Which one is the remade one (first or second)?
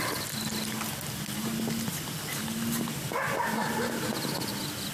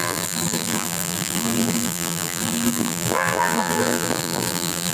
second